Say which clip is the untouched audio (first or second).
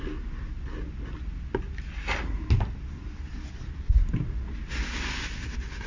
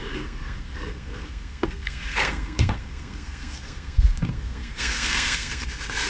first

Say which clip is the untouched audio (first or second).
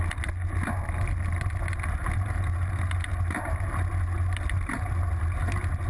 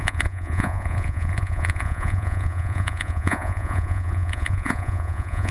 first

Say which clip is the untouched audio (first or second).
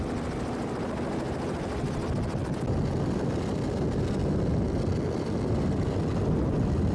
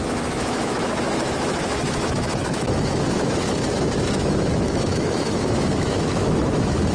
first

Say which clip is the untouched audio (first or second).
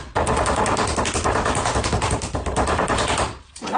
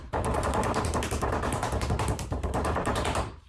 first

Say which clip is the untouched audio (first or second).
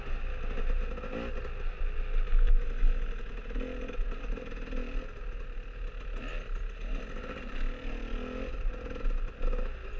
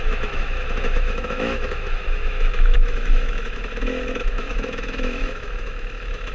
first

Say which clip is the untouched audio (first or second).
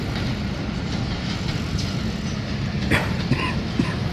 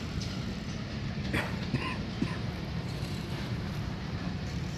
first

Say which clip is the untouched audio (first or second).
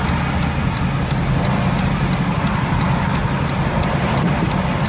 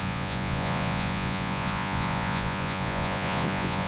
first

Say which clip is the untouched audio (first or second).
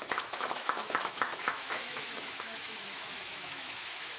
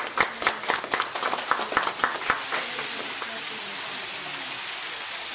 second